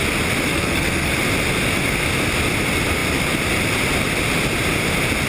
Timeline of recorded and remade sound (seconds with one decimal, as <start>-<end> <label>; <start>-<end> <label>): 0.0-0.5 recorded; 0.5-1.1 remade; 1.1-5.3 recorded

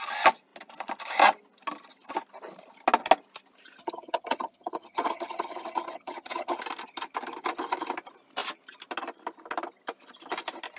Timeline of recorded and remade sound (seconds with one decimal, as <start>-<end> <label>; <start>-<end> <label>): 0.0-3.8 recorded; 3.8-6.6 remade; 6.6-10.8 recorded

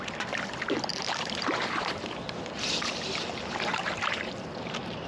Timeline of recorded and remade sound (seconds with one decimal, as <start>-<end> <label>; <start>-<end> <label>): 0.0-0.9 recorded; 0.9-2.5 remade; 2.5-3.7 recorded; 3.7-5.1 remade

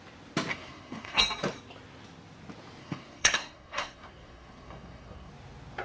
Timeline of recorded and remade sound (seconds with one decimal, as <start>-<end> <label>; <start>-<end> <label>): 0.0-0.5 recorded; 0.5-1.2 remade; 1.2-2.8 recorded; 2.8-5.3 remade; 5.3-5.8 recorded

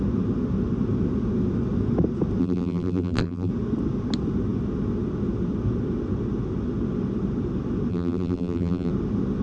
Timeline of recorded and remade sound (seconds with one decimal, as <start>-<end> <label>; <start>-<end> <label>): 0.0-2.4 recorded; 2.4-3.5 remade; 3.5-7.9 recorded; 7.9-8.9 remade; 8.9-9.4 recorded

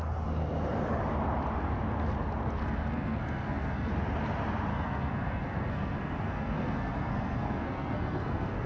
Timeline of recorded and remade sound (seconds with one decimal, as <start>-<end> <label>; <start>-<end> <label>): 0.0-2.6 recorded; 2.6-3.9 remade; 3.9-4.7 recorded; 4.7-8.7 remade

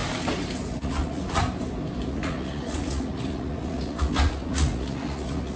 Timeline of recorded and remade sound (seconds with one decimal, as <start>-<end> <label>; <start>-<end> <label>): 0.0-0.7 recorded; 0.7-1.4 remade; 1.4-2.1 recorded; 2.1-5.6 remade

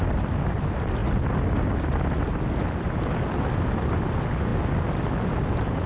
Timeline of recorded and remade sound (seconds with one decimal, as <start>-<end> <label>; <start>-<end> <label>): 0.0-5.9 recorded